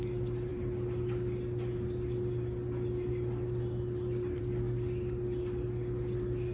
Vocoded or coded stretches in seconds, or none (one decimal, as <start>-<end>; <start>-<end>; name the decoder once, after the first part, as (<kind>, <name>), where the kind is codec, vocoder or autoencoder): none